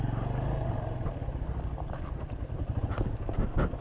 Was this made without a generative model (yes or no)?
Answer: yes